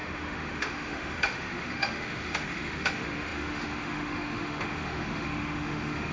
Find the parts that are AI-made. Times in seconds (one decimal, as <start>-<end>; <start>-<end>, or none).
0.0-6.1